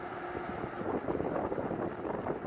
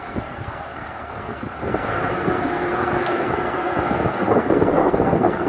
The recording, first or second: first